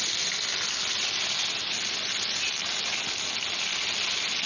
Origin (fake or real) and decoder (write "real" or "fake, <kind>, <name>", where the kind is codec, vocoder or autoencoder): real